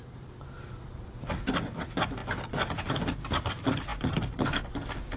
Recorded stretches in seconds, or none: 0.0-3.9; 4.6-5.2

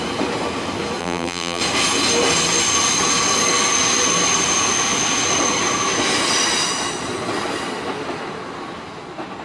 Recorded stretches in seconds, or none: 0.0-1.0; 1.6-9.4